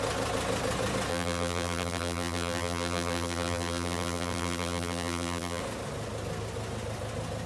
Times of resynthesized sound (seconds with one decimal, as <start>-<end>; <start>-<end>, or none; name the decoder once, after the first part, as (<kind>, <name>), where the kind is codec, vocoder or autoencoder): 1.1-5.6 (vocoder, BigVGAN v2)